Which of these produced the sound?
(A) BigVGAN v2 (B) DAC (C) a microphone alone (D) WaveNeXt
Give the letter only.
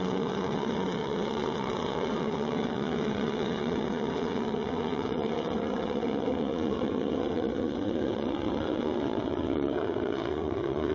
D